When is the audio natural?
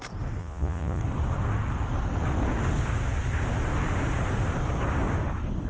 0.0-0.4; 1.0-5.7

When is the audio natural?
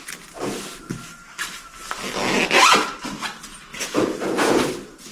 0.0-3.7; 4.6-5.1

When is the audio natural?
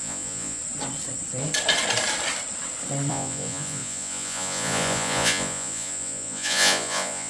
0.6-3.1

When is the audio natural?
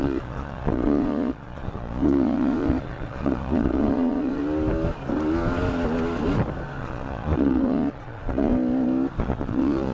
4.4-6.8; 8.5-9.2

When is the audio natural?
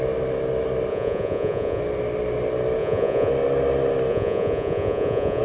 0.0-0.9; 1.8-2.8; 3.3-4.1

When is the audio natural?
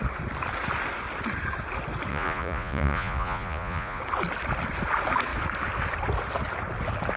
0.0-2.1; 4.0-7.2